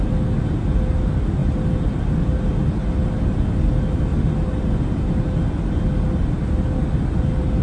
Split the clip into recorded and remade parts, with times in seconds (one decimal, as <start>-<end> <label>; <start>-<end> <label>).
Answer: 0.0-7.6 recorded